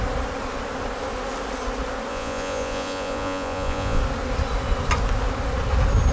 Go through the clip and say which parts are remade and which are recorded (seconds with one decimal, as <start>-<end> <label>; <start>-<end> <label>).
0.0-2.1 recorded; 2.1-4.0 remade; 4.0-6.1 recorded